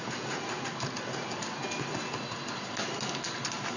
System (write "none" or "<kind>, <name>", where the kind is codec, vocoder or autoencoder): none